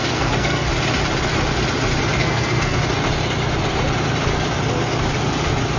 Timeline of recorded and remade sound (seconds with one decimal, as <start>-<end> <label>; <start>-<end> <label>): 0.0-0.7 remade; 0.7-2.2 recorded; 2.2-2.8 remade; 2.8-5.8 recorded